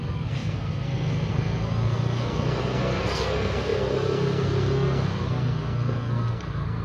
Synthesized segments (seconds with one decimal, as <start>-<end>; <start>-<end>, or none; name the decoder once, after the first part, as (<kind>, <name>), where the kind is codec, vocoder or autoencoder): 0.0-6.8 (codec, SNAC)